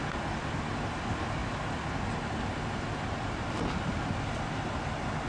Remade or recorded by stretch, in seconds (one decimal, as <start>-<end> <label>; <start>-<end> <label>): 0.0-5.3 recorded